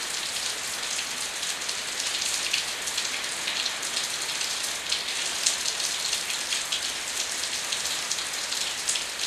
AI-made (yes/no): no